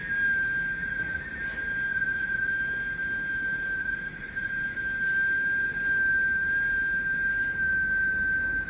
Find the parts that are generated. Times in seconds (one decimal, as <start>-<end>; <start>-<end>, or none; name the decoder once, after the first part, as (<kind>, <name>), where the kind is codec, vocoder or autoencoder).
0.8-1.3 (vocoder, Vocos); 1.9-2.5; 3.8-4.5